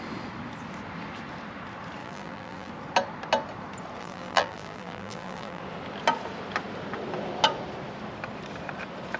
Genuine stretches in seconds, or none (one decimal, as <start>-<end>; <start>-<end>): 0.0-2.0; 2.7-4.0; 5.6-9.2